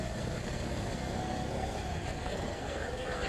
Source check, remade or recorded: remade